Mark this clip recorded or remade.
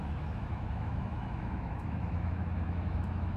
remade